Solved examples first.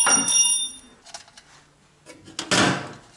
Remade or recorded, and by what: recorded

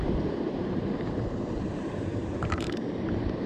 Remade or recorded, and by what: remade, vocoder, BigVGAN v2